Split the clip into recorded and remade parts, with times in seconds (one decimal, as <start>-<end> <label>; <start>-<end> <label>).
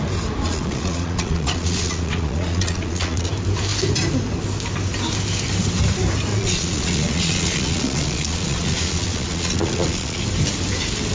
0.0-0.4 recorded; 0.4-3.3 remade; 3.3-6.3 recorded; 6.3-10.2 remade; 10.2-11.1 recorded